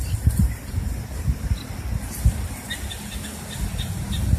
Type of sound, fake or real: real